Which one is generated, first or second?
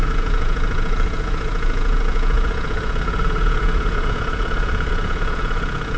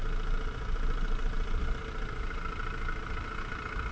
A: first